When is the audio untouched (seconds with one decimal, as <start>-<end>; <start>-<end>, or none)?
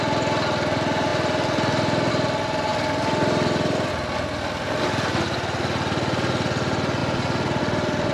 0.0-8.1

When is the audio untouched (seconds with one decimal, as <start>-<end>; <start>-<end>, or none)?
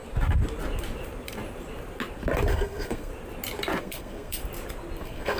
0.0-2.5; 3.1-3.8; 4.4-5.0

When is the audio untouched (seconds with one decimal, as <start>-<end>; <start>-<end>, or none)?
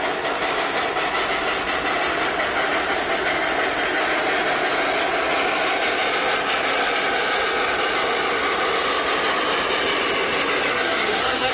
0.0-10.7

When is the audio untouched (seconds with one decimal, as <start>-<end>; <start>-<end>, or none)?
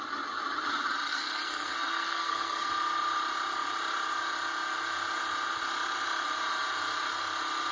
0.0-1.1; 2.7-7.7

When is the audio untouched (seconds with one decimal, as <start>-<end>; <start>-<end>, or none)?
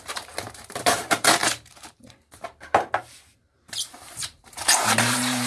none